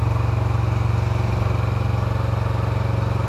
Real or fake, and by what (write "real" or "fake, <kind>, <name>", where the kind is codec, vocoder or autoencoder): real